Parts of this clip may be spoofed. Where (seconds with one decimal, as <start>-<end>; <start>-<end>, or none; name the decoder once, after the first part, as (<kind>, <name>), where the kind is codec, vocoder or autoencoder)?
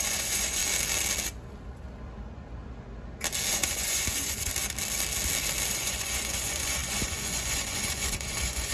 0.0-0.6 (vocoder, Vocos); 3.5-4.5; 5.7-8.7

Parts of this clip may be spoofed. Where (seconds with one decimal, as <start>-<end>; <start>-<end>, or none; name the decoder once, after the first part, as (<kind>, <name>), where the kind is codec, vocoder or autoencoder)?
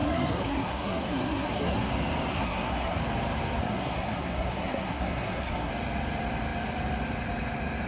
0.0-1.9 (codec, SNAC); 2.3-3.0; 3.6-5.7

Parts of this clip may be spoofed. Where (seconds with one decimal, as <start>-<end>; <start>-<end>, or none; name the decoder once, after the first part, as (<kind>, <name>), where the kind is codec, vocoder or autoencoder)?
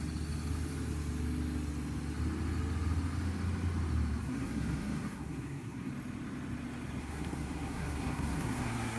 4.2-5.9 (codec, SNAC); 7.0-9.0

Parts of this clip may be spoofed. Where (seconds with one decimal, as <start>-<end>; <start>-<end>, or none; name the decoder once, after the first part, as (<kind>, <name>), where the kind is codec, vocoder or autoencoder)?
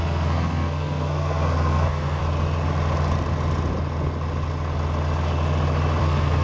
0.0-2.2 (codec, SNAC); 6.0-6.4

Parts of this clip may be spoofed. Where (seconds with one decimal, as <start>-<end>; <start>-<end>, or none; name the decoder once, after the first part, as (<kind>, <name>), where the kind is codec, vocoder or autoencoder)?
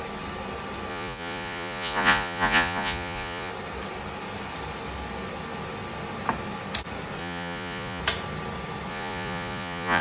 0.9-3.5 (vocoder, Vocos); 7.2-8.0; 8.9-10.0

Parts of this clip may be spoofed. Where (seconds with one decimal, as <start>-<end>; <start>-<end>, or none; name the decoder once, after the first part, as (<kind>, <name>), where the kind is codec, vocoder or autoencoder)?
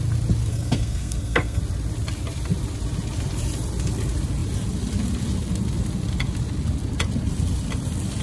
0.5-1.6 (codec, SNAC)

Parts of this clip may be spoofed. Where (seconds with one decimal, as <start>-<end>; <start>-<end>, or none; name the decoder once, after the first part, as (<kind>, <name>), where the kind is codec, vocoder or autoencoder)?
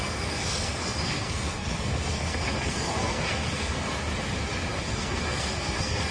0.0-3.9 (codec, SNAC); 4.8-6.1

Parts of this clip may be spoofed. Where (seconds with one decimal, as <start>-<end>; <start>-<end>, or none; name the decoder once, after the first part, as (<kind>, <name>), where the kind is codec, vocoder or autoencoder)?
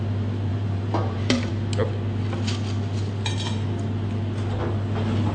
0.5-1.5 (vocoder, BigVGAN v2)